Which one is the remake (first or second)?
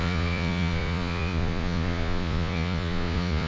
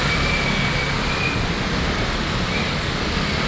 first